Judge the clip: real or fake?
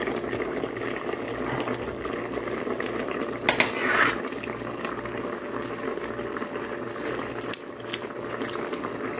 real